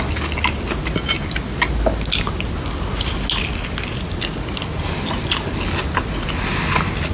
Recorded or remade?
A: recorded